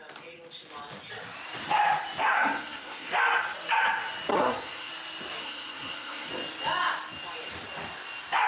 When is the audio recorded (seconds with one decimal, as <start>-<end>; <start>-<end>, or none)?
0.0-2.2; 3.1-4.3; 4.9-5.4; 6.3-8.5